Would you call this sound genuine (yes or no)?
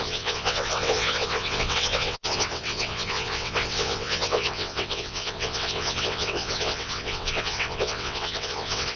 no